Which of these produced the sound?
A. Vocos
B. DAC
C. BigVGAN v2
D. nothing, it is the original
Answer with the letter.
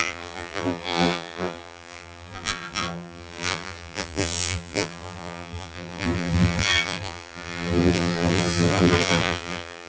C